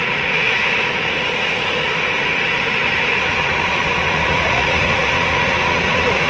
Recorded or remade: remade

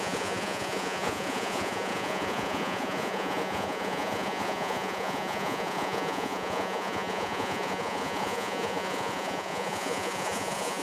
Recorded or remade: remade